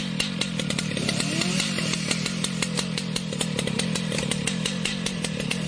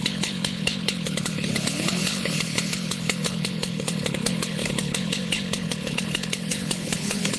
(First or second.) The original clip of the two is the first